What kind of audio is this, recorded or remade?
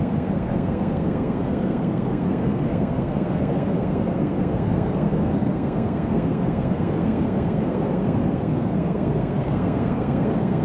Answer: remade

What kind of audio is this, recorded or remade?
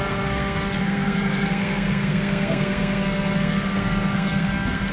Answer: remade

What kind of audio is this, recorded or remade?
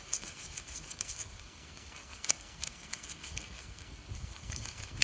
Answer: remade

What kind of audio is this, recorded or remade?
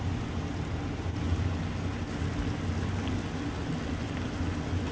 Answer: recorded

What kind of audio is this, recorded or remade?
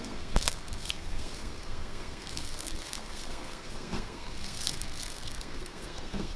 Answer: remade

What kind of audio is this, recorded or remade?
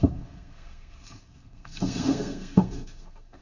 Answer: remade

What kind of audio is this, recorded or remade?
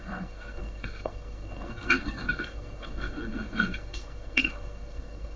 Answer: remade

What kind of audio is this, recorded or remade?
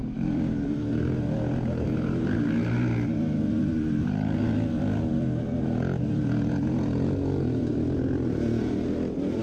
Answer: recorded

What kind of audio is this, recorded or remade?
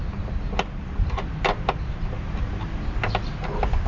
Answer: recorded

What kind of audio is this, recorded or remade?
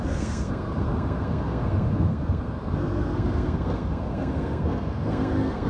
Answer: remade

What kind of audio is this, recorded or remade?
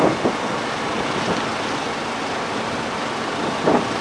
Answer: recorded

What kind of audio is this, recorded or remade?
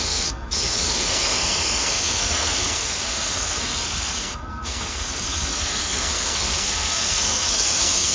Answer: remade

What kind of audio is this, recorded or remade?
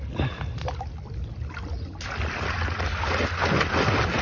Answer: recorded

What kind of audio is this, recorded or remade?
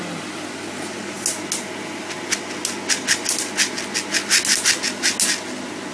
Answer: recorded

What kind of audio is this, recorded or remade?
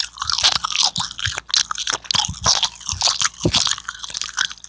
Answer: recorded